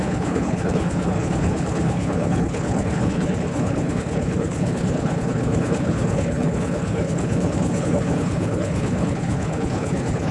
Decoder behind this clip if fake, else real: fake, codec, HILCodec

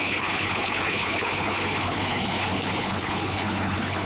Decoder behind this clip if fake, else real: fake, codec, HILCodec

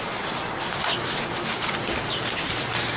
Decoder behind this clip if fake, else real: real